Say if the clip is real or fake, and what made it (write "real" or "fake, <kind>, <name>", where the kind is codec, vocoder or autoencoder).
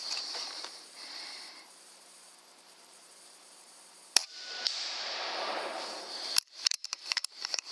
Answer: fake, vocoder, BigVGAN v2